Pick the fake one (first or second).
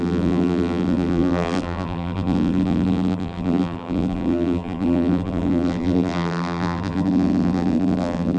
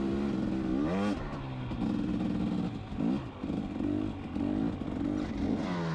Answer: first